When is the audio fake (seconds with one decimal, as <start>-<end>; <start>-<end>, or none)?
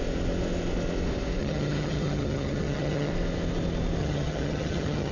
1.4-3.1; 4.0-5.1